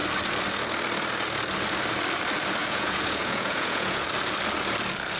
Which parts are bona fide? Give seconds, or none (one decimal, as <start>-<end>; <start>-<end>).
0.0-2.6; 4.0-5.2